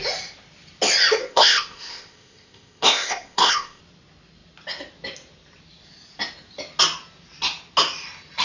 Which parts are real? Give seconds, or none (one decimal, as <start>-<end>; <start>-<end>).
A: 0.0-1.2; 3.8-8.4